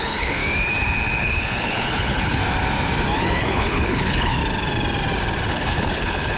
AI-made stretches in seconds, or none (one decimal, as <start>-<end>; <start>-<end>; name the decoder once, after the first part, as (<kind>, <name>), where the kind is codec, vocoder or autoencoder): 0.0-0.4 (codec, HILCodec); 1.2-2.4; 3.4-4.4; 5.5-6.4